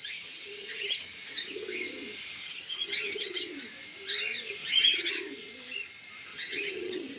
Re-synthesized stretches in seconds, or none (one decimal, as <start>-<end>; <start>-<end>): 0.0-1.0; 2.4-3.4; 4.6-5.1; 6.3-7.2